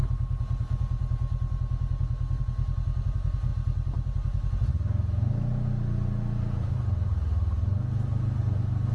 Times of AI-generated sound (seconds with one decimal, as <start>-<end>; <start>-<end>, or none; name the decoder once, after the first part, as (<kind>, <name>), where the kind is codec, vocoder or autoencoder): none